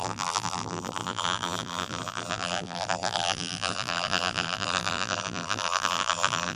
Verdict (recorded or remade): remade